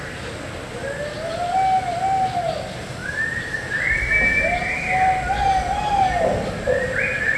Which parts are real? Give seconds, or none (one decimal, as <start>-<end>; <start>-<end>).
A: 0.0-7.4